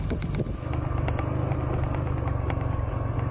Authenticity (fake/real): real